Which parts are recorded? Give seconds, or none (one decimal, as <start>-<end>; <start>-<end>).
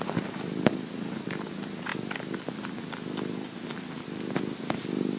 0.0-5.2